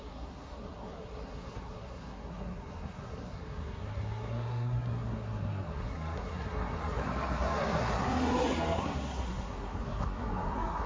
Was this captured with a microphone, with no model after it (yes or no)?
no